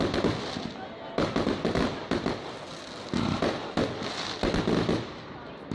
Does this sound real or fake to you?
real